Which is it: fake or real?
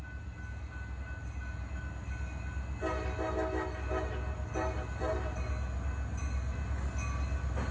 real